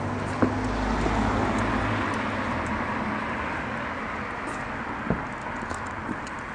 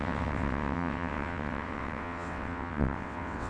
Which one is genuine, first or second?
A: first